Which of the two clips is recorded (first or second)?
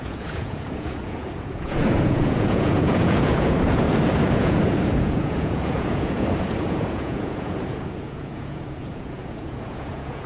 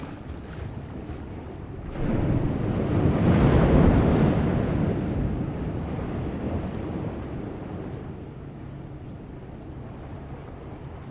second